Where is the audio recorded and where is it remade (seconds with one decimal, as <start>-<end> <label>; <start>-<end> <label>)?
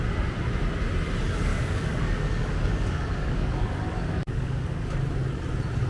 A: 0.0-1.5 recorded; 1.5-5.0 remade; 5.0-5.9 recorded